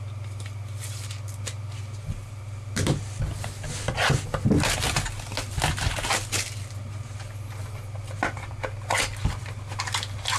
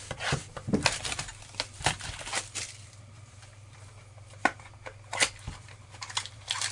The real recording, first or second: first